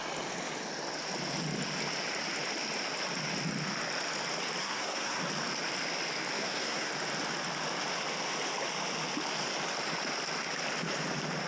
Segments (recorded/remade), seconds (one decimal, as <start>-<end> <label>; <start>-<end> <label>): 0.0-4.6 recorded; 4.6-5.2 remade; 5.2-6.4 recorded; 6.4-6.9 remade; 6.9-11.5 recorded